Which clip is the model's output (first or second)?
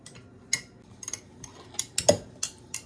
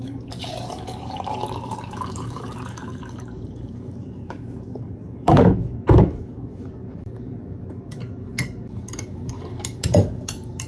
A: second